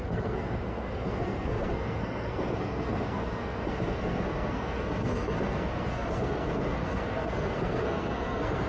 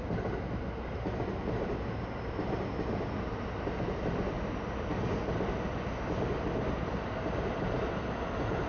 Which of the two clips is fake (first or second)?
first